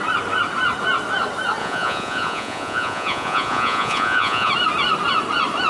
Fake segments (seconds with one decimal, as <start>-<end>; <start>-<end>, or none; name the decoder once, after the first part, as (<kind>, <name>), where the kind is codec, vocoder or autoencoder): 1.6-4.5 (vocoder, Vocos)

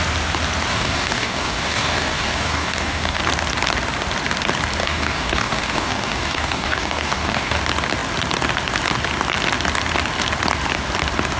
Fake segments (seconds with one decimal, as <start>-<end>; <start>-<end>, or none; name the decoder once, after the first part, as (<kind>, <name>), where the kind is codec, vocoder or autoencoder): 0.7-3.2 (codec, DAC); 4.8-7.6

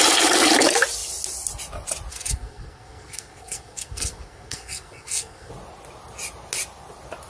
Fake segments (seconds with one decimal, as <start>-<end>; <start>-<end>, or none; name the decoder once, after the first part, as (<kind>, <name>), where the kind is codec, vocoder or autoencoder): 2.1-5.5 (codec, SNAC)

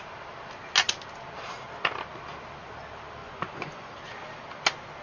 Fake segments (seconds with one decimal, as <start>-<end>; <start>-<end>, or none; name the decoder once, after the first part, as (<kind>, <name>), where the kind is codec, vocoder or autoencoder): 3.2-3.9 (vocoder, Vocos)

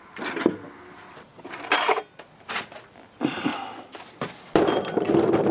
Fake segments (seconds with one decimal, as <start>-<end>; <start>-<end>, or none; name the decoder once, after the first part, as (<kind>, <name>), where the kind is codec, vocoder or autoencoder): none

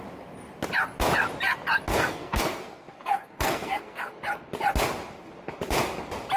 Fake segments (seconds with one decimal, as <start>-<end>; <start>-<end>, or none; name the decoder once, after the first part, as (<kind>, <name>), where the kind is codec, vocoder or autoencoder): 1.9-4.2 (codec, SNAC)

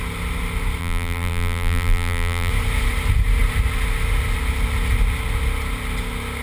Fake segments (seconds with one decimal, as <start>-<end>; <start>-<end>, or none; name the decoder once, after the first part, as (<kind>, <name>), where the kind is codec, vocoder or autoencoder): 0.8-2.5 (vocoder, BigVGAN v2)